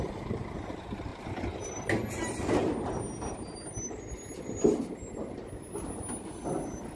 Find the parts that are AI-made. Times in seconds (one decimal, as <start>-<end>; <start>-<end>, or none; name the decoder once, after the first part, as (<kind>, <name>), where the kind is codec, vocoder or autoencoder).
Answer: none